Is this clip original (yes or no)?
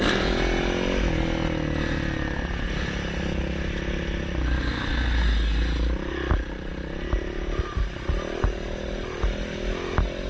yes